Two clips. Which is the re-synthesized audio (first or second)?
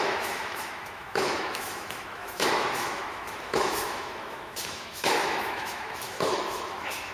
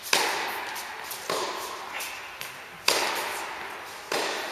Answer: first